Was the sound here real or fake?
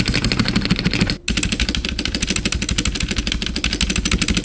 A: real